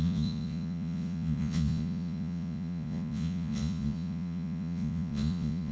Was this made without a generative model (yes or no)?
no